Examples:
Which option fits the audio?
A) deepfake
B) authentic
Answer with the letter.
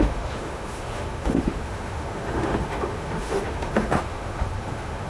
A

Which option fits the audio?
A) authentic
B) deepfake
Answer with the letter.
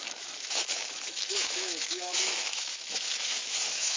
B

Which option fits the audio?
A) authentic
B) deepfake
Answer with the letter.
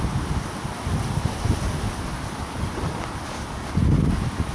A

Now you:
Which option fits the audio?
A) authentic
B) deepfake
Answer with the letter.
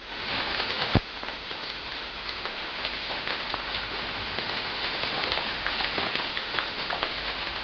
B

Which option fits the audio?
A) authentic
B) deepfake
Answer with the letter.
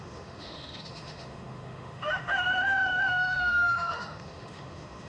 B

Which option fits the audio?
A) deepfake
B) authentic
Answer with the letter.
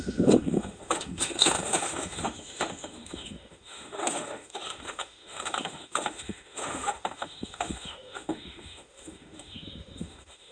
A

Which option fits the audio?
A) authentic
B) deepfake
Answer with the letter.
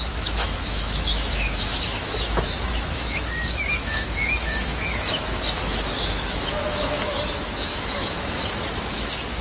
B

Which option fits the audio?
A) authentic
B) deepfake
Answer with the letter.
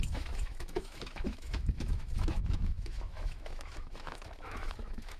B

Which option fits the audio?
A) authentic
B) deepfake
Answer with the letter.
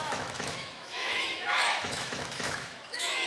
B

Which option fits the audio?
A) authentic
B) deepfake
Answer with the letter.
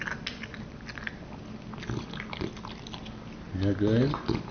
A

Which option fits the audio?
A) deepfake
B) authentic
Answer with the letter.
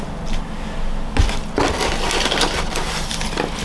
B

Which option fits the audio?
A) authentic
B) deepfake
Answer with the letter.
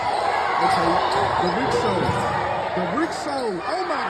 A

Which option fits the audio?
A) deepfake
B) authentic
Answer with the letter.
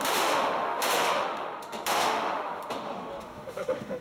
A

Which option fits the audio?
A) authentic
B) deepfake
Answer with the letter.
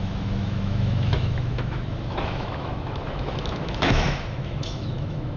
B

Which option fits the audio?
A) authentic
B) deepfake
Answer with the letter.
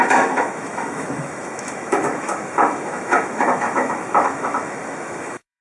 B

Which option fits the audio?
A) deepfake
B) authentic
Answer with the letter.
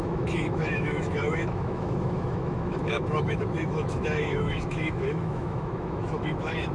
A